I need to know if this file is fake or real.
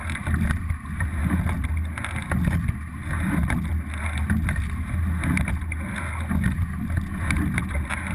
real